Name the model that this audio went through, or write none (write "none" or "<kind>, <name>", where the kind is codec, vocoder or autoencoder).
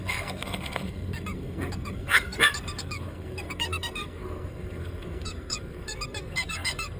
codec, SNAC